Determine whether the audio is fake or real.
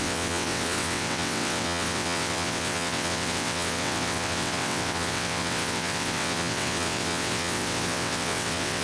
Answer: fake